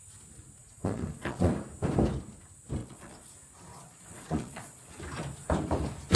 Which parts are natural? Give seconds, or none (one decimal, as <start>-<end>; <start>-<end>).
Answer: 0.0-0.6; 1.5-2.8; 3.3-3.7; 5.0-6.2